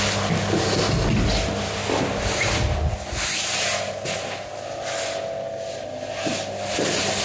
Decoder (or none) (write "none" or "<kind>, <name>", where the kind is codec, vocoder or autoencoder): none